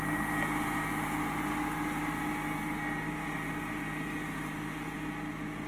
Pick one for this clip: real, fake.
real